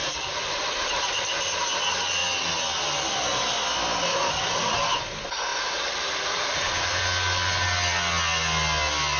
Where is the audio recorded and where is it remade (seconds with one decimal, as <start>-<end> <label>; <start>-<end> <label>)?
0.0-1.8 remade; 1.8-5.5 recorded; 5.5-7.0 remade; 7.0-9.2 recorded